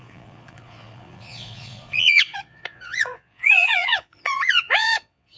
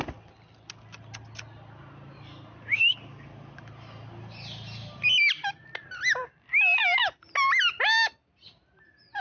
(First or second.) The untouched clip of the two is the second